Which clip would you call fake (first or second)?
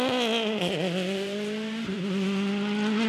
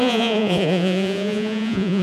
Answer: second